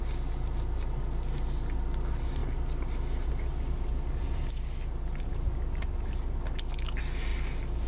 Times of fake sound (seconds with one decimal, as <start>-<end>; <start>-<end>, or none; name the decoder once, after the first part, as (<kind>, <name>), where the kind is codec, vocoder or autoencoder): none